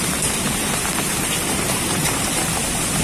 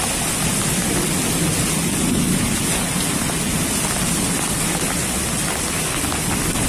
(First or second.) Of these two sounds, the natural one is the second